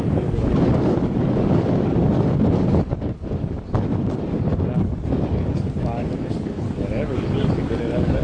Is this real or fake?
fake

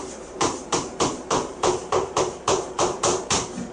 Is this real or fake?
fake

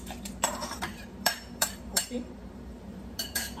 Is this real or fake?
fake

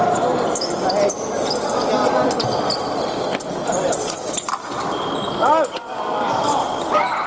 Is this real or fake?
real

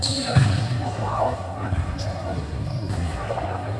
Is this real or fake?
fake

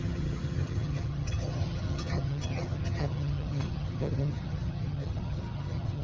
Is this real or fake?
fake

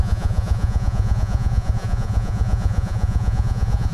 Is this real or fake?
fake